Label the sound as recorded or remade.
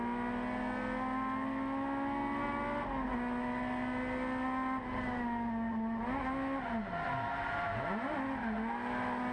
recorded